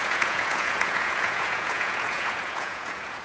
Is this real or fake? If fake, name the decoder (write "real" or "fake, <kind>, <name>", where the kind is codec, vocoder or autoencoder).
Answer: fake, vocoder, Vocos